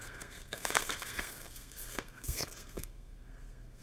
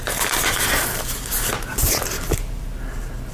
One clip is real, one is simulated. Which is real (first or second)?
second